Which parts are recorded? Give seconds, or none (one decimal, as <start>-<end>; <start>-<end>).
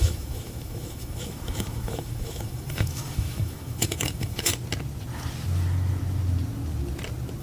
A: 4.5-7.4